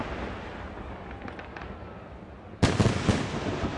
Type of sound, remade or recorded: recorded